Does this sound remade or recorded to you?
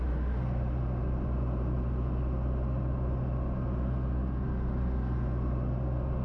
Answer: recorded